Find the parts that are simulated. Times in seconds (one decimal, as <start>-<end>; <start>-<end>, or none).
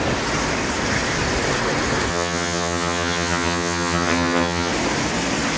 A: 2.1-4.7